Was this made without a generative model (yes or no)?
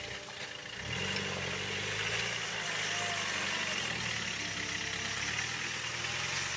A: yes